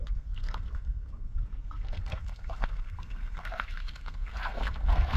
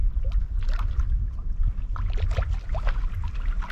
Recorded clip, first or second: second